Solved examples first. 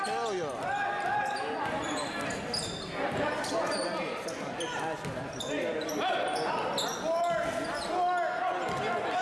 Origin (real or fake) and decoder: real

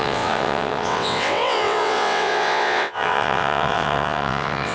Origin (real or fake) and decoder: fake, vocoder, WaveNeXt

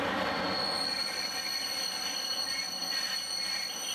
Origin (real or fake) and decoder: real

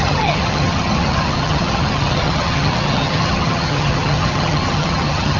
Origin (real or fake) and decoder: fake, vocoder, HiFi-GAN